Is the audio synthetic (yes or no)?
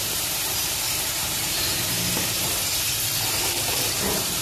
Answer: yes